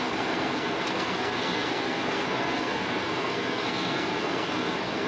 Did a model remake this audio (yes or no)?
yes